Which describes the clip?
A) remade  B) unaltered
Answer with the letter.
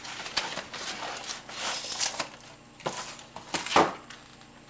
B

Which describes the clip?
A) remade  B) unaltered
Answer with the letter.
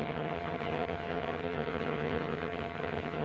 A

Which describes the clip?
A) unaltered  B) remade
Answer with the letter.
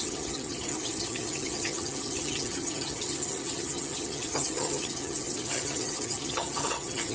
B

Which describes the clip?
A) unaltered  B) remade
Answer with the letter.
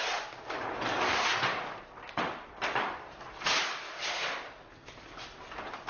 A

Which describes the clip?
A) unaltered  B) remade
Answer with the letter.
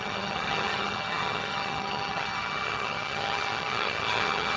B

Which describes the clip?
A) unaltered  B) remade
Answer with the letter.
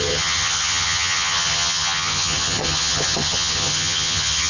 B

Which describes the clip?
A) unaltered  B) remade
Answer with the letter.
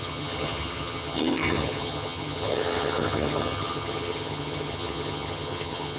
B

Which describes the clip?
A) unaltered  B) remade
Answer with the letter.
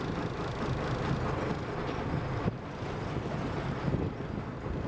A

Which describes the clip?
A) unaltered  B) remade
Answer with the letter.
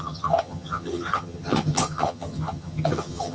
B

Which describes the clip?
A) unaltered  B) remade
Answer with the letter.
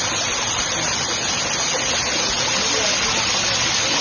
A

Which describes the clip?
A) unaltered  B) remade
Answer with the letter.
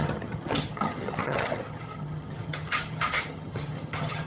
B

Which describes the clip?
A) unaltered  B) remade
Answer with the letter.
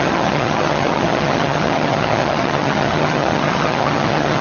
B